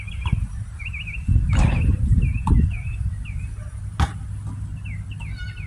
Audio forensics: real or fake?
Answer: real